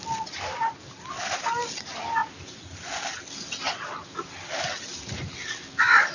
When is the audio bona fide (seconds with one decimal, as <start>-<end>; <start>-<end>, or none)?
0.0-6.1